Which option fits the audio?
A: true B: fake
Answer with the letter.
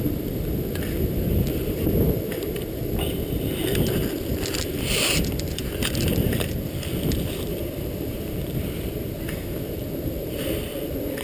B